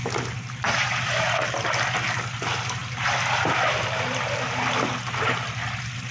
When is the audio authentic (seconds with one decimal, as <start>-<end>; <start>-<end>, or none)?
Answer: 0.0-6.1